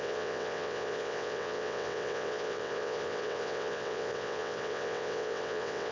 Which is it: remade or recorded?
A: remade